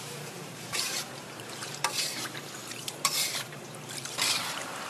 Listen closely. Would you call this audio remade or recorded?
remade